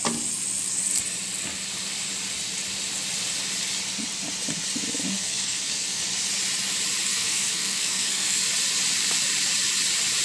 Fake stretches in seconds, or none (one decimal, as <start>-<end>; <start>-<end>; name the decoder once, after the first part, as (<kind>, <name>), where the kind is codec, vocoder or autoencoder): 5.2-6.0 (codec, SNAC); 7.1-8.4